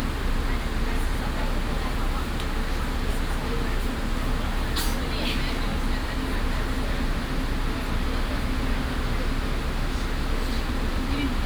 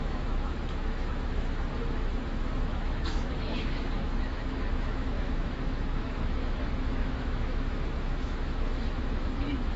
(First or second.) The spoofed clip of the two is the second